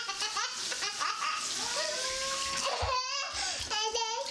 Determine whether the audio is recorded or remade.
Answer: recorded